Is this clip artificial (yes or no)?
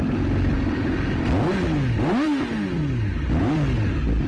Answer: no